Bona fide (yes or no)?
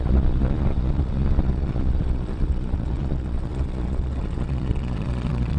no